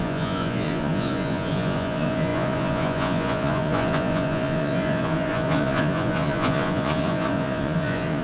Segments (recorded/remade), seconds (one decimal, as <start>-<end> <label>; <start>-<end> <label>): 0.0-8.2 remade